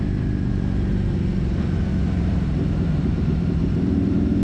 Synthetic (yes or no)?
yes